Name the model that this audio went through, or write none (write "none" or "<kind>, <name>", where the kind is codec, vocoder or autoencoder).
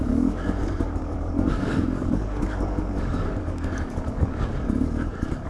codec, DAC